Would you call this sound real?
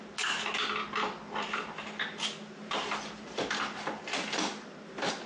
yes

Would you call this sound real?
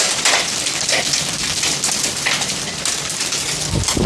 yes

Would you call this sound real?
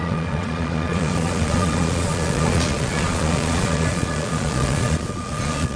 no